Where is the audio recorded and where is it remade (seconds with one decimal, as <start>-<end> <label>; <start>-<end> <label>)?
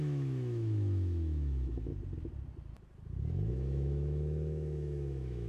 0.0-1.9 remade; 1.9-3.5 recorded; 3.5-5.5 remade